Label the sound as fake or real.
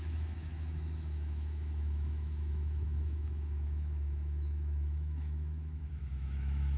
fake